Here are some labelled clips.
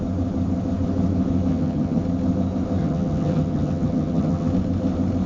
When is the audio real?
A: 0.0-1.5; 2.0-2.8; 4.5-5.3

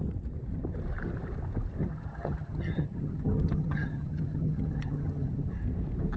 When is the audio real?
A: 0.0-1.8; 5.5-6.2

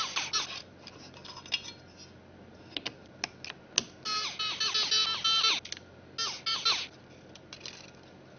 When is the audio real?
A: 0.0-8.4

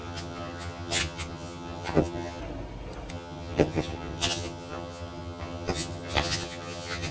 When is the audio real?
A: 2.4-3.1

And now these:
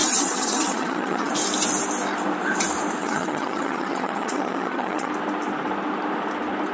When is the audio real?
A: 1.3-3.0; 5.1-6.7